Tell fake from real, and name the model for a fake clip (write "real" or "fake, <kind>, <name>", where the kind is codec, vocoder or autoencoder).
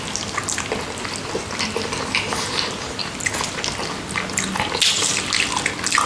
real